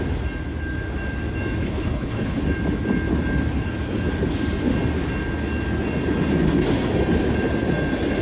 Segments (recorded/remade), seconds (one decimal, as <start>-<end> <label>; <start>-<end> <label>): 0.0-1.6 recorded; 1.6-2.4 remade; 2.4-8.2 recorded